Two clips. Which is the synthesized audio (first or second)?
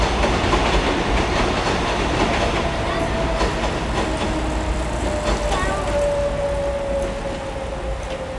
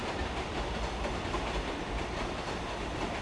second